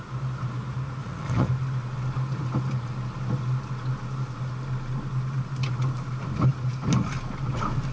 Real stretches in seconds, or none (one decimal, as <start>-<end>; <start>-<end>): 0.0-1.0; 1.5-7.9